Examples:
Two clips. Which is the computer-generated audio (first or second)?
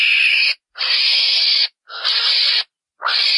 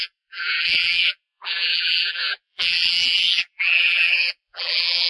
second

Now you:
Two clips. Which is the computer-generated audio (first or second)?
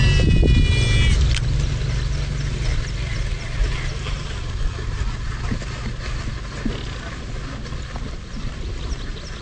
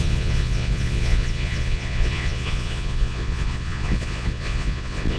second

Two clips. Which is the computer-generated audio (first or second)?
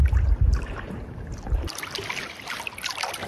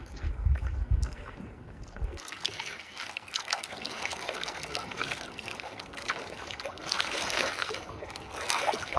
second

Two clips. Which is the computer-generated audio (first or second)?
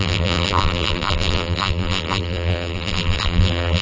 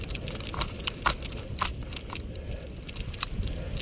first